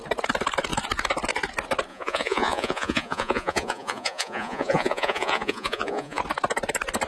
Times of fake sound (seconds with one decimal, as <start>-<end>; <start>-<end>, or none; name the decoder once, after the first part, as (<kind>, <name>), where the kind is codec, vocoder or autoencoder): 1.9-6.2 (vocoder, Vocos)